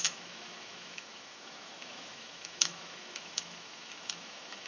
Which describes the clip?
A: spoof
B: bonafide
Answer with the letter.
A